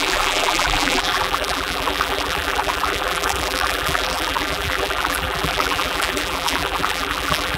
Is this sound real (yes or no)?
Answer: no